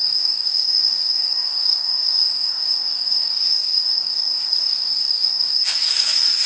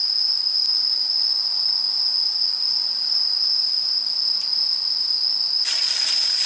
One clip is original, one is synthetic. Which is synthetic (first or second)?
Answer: first